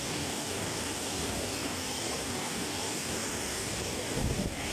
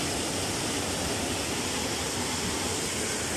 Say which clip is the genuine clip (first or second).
second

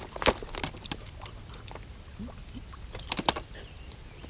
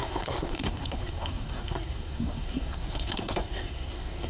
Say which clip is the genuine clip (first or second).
first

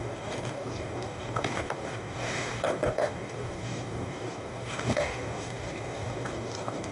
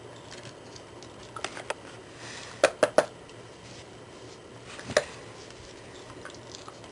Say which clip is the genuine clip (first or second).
second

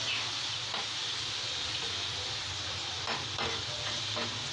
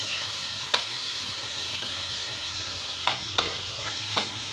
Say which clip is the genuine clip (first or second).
first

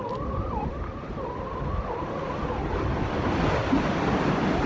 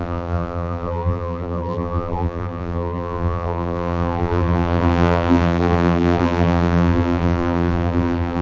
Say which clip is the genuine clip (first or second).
first